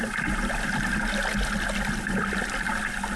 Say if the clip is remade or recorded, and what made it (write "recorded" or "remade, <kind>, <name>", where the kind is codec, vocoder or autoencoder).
recorded